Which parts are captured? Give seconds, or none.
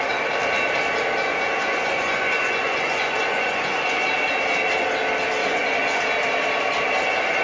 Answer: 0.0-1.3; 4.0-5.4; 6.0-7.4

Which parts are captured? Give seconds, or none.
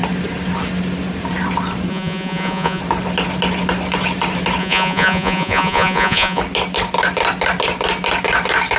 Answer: 0.0-1.9; 2.8-4.6; 6.4-8.8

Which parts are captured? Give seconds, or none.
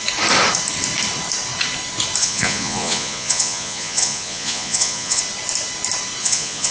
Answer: 0.0-2.2; 5.2-6.2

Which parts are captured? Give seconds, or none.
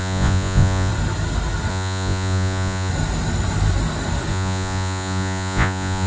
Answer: 0.9-1.7; 2.9-4.3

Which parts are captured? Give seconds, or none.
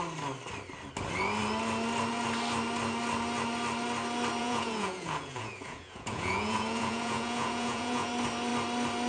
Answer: 0.0-4.4; 8.1-9.1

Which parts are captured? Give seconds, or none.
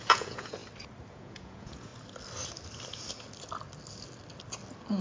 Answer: 0.6-1.1; 1.9-5.0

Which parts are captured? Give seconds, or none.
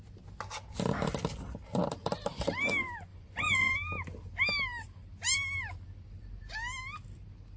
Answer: 0.0-3.1; 3.7-7.6